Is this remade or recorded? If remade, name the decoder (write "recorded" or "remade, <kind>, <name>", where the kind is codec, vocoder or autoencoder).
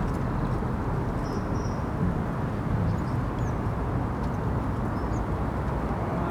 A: recorded